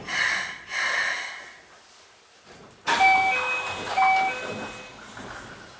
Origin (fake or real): real